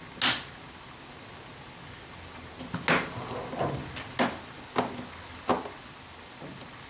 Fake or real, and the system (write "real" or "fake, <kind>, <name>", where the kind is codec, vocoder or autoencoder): real